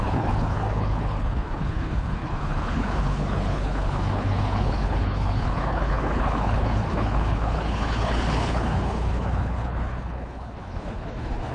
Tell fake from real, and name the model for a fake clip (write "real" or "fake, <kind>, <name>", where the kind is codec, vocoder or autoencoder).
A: fake, codec, HILCodec